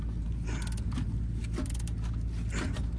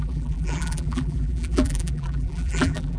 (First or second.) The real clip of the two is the first